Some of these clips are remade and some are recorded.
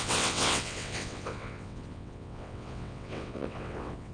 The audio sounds remade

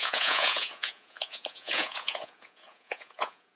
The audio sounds remade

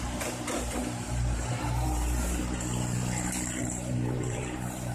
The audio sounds remade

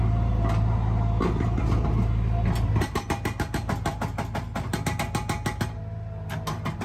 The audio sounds recorded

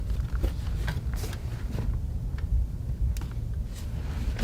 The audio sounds recorded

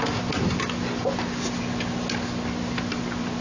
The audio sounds recorded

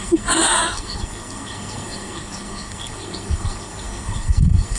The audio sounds remade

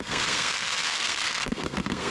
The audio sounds remade